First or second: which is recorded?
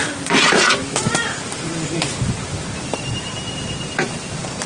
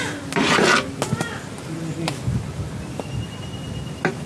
second